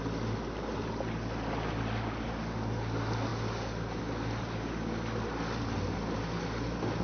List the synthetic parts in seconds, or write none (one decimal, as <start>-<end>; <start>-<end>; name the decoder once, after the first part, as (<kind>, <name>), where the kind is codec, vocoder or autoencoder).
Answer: none